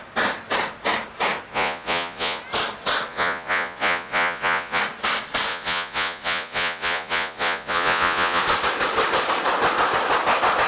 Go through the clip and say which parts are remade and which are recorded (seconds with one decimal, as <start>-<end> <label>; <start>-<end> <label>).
0.0-1.5 recorded; 1.5-2.4 remade; 2.4-3.1 recorded; 3.1-4.8 remade; 4.8-5.5 recorded; 5.5-8.4 remade; 8.4-10.7 recorded